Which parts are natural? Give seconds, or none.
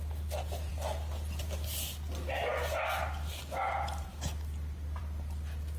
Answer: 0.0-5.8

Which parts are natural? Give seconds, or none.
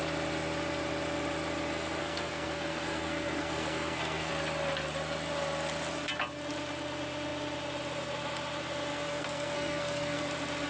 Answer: 0.0-2.0; 4.3-8.9; 10.2-10.7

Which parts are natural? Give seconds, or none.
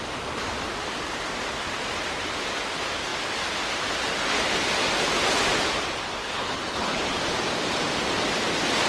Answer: 0.0-6.2; 7.1-8.9